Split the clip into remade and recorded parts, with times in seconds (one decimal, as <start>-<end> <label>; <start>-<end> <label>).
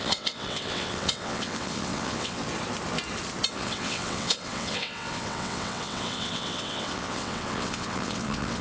0.0-2.4 remade; 2.4-3.5 recorded; 3.5-8.6 remade